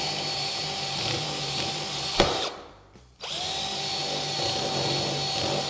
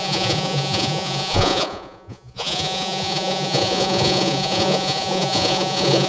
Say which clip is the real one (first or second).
first